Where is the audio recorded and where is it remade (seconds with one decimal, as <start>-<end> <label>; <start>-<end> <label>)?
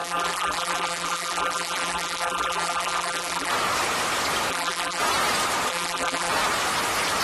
0.0-3.5 remade; 3.5-4.5 recorded; 4.5-5.0 remade; 5.0-5.7 recorded; 5.7-6.3 remade; 6.3-7.2 recorded